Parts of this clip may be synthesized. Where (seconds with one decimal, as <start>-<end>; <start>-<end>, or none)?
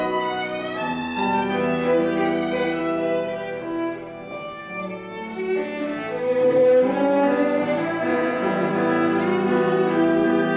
8.1-8.7